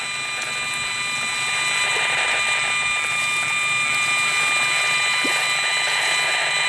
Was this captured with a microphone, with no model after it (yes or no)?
yes